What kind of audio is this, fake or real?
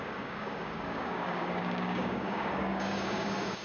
fake